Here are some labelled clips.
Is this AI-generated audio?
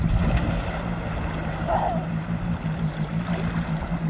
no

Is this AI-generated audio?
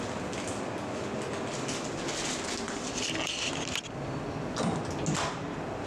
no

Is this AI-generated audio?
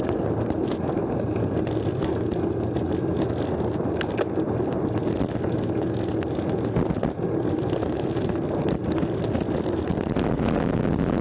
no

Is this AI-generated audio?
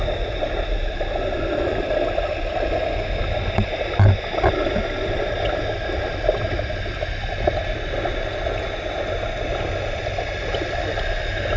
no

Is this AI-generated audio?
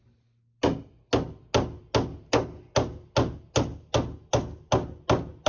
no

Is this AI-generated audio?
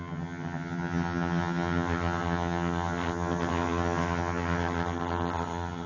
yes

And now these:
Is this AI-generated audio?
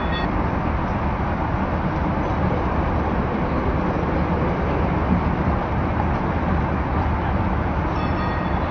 no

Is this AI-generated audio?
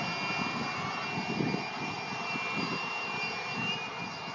no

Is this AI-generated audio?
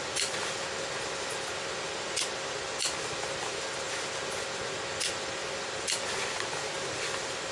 no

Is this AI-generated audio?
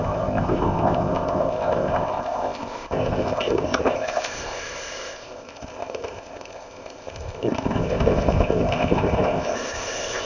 yes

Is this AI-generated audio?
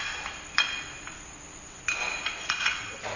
no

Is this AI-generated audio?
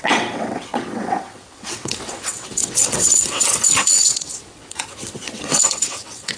yes